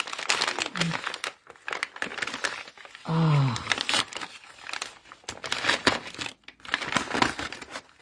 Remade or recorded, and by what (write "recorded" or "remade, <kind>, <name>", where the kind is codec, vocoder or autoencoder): recorded